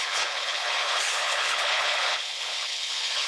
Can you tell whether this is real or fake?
fake